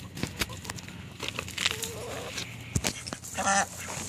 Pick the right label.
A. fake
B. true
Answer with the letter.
B